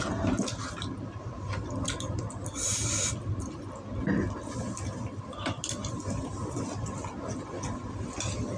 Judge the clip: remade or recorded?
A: recorded